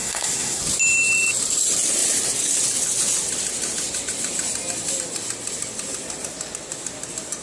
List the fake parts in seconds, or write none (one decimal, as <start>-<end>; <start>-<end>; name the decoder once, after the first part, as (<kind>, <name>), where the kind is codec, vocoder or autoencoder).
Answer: 0.0-0.6 (codec, SNAC)